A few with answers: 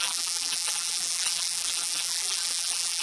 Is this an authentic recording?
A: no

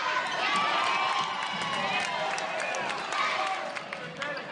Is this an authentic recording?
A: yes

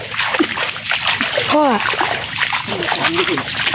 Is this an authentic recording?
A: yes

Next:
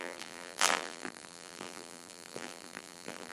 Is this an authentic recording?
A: no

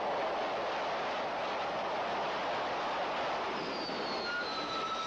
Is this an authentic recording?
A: yes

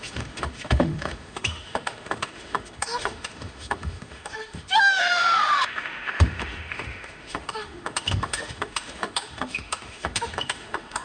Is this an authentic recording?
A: no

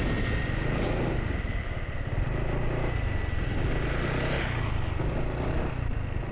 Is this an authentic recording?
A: yes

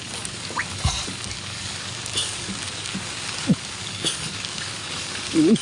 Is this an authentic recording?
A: no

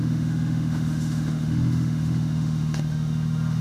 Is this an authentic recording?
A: no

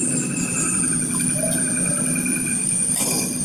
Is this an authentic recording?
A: yes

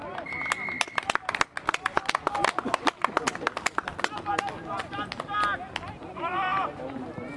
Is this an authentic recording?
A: yes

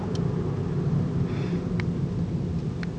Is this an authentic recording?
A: yes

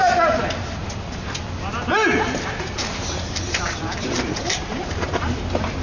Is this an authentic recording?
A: no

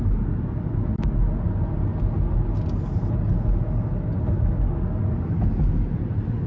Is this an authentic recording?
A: yes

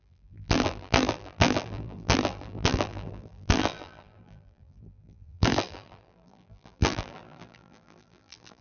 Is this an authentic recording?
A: no